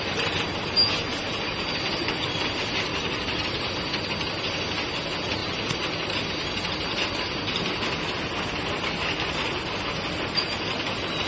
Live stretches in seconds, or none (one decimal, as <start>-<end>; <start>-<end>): 0.0-2.9; 3.6-5.4; 6.1-11.3